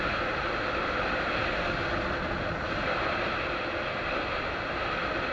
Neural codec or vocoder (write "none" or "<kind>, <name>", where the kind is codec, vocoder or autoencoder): none